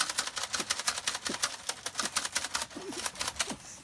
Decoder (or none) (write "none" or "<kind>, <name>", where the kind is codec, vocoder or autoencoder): none